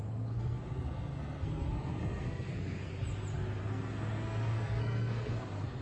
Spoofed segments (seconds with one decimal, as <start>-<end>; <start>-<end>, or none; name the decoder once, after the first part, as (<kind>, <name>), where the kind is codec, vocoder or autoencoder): 0.0-2.9 (codec, SNAC); 3.6-5.8